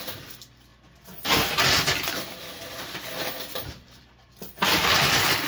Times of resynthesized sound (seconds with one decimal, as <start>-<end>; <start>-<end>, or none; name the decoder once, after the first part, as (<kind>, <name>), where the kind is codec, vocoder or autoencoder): none